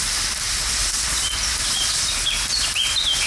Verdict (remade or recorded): recorded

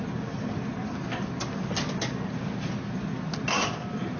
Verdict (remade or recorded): recorded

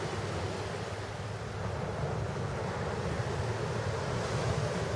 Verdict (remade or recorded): recorded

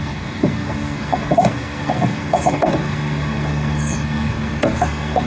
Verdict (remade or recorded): remade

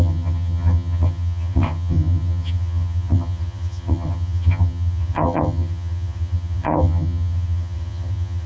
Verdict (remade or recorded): remade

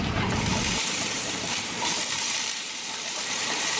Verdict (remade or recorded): remade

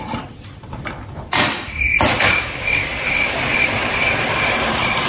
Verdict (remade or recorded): remade